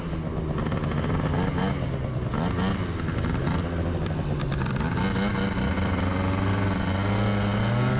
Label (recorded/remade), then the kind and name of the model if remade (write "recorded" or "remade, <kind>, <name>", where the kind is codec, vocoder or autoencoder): recorded